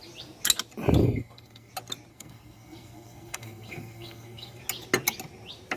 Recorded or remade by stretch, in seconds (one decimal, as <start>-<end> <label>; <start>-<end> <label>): 0.0-1.0 recorded; 1.0-1.7 remade; 1.7-2.1 recorded; 2.1-4.6 remade; 4.6-5.8 recorded